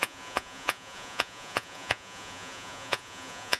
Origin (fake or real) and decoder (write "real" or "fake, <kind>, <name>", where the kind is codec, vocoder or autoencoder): fake, vocoder, Vocos